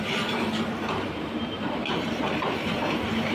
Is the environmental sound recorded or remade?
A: remade